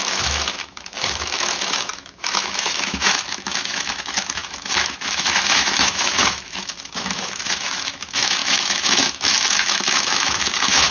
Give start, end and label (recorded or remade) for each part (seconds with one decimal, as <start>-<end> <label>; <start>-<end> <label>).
0.0-10.9 remade